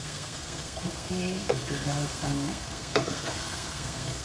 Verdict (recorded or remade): remade